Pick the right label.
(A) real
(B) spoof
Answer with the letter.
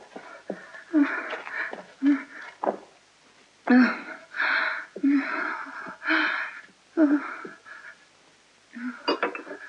A